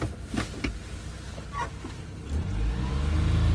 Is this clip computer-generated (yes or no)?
no